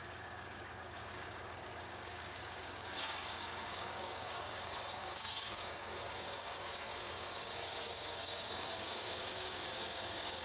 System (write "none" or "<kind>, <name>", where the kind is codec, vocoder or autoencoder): codec, DAC